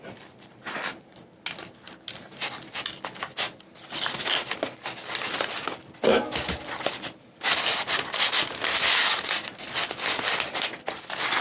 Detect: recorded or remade recorded